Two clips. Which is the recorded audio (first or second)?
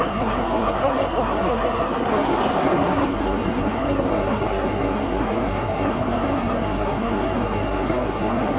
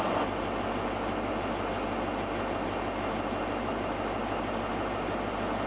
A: second